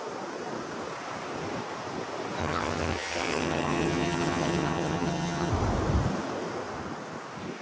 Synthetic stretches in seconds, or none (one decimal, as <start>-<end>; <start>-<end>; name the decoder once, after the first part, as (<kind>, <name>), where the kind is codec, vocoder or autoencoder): 2.4-5.5 (vocoder, HiFi-GAN)